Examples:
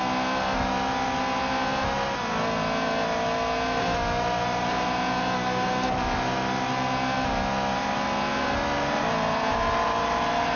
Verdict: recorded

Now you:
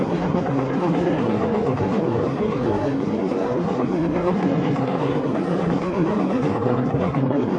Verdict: remade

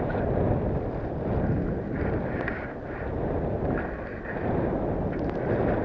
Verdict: recorded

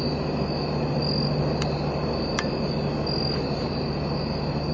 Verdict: recorded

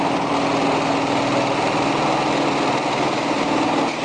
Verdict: recorded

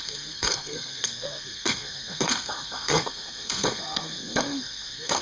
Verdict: remade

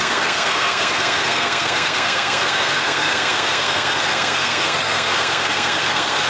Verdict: remade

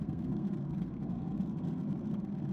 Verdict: remade